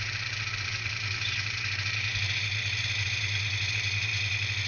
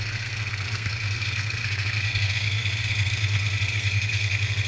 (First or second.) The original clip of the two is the first